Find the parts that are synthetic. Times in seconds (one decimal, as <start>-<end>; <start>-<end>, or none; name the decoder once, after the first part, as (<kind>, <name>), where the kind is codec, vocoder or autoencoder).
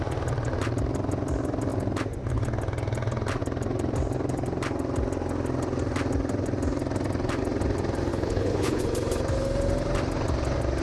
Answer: 8.1-8.8 (codec, HILCodec)